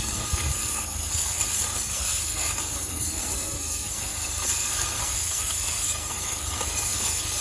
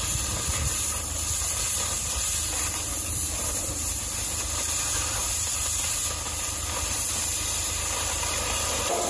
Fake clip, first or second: first